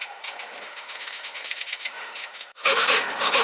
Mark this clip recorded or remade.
remade